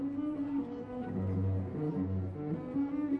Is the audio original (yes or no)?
yes